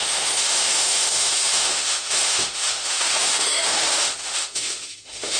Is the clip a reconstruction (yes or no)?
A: yes